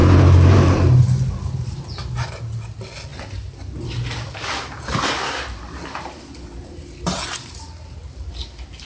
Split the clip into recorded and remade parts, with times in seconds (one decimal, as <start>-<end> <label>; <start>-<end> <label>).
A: 0.0-8.9 recorded